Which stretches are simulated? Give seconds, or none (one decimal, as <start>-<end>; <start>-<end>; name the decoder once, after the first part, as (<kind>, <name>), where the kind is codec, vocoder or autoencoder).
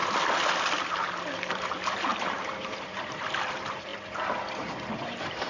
1.5-3.9 (vocoder, BigVGAN v2); 4.9-5.5